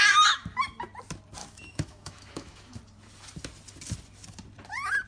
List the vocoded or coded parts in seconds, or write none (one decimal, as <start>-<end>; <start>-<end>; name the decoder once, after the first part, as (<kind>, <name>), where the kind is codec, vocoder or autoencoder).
1.4-2.8 (autoencoder, DAC-VAE)